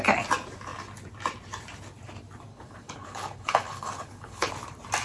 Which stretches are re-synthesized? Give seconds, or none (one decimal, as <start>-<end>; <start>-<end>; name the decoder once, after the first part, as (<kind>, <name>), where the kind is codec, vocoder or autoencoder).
2.5-4.5 (codec, HILCodec)